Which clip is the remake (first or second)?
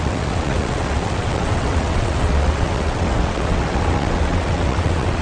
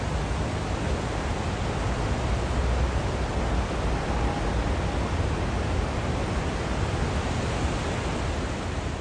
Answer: first